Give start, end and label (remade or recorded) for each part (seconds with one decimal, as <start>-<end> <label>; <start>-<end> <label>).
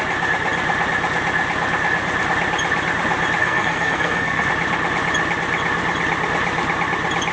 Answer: 0.0-3.4 recorded; 3.4-4.5 remade; 4.5-7.3 recorded